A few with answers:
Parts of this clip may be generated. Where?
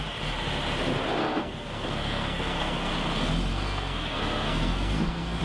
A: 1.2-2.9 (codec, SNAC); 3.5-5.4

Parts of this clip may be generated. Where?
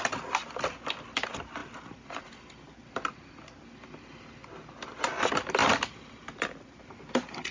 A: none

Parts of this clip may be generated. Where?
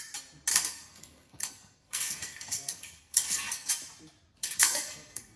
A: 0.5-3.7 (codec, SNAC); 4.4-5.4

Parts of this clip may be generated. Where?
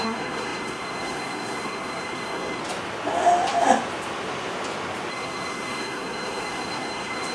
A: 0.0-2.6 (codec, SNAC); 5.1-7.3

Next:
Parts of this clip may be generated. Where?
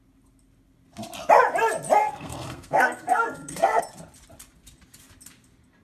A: 2.0-3.8 (codec, SNAC)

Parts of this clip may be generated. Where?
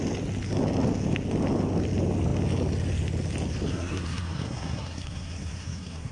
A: 3.7-6.1 (codec, SNAC)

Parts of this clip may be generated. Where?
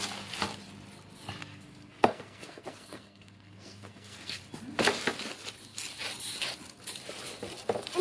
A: 1.4-4.4 (codec, SNAC)